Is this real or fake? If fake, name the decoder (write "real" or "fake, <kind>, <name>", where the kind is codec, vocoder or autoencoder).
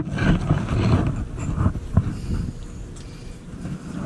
real